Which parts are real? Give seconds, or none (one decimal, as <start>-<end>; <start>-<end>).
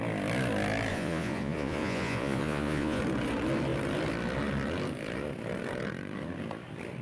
0.0-0.9; 3.0-7.0